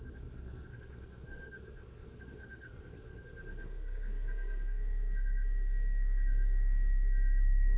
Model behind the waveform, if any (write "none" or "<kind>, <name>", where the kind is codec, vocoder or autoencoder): codec, SNAC